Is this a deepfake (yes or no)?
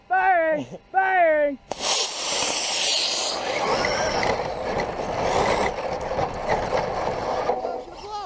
no